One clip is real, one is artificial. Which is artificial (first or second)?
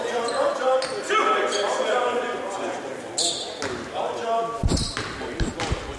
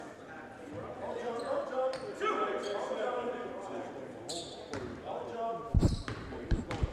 second